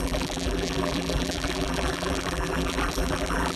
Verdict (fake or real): fake